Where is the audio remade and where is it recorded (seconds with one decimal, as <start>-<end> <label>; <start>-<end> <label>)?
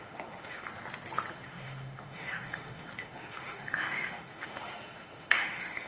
0.0-0.7 remade; 0.7-1.3 recorded; 1.3-5.9 remade